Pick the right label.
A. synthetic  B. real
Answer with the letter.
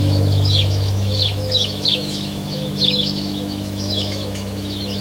A